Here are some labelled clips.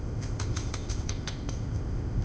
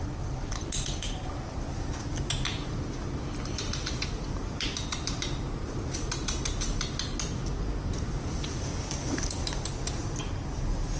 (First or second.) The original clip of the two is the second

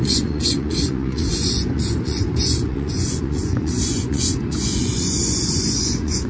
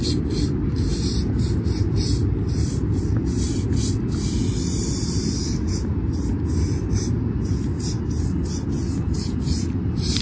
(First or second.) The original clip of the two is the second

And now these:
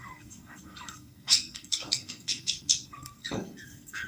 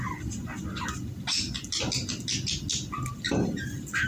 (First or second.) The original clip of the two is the second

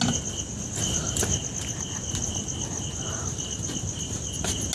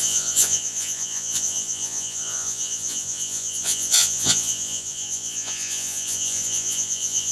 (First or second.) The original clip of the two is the first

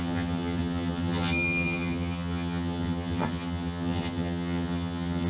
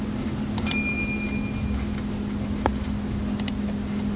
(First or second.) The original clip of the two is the second